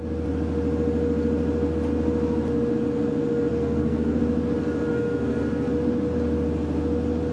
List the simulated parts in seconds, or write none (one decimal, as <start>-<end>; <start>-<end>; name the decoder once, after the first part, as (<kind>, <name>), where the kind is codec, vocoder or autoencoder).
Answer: 3.5-4.2 (codec, SNAC); 4.9-5.7